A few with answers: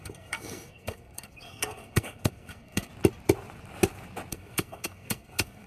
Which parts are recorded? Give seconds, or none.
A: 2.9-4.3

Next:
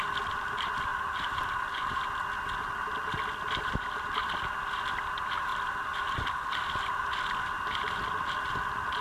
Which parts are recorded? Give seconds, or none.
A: 0.0-0.9; 1.4-9.0

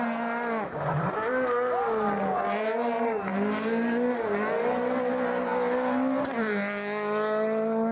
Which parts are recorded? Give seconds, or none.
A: 0.0-7.9